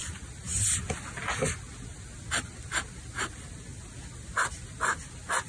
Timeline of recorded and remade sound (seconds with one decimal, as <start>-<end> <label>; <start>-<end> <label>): 0.0-5.5 recorded